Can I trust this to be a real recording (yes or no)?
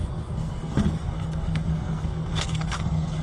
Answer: no